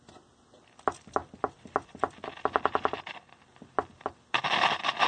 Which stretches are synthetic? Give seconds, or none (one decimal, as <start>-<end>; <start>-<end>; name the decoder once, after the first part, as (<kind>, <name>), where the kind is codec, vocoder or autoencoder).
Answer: none